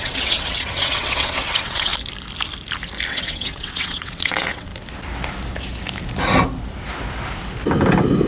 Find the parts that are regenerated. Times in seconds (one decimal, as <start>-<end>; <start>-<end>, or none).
0.0-1.9; 3.1-4.7